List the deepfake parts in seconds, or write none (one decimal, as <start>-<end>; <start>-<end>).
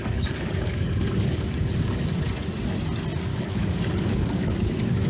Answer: 0.0-2.1; 3.3-5.1